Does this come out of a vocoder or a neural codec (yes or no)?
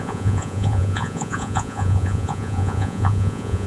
yes